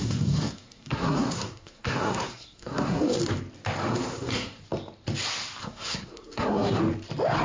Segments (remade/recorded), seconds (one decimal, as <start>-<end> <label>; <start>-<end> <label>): 0.0-3.2 remade; 3.2-3.9 recorded; 3.9-4.6 remade; 4.6-5.6 recorded; 5.6-6.8 remade; 6.8-7.4 recorded